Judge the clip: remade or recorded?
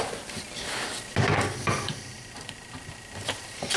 recorded